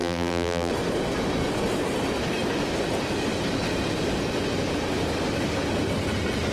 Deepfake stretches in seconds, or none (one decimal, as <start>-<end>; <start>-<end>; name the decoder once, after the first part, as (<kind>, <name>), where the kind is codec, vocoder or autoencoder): 0.0-0.7 (vocoder, BigVGAN v2)